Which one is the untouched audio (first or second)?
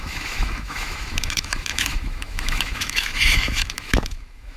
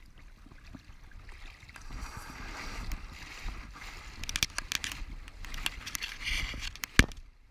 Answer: second